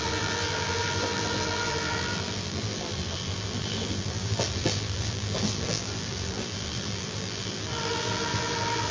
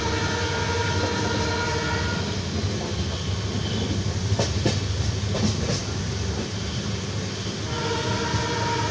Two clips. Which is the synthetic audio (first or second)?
first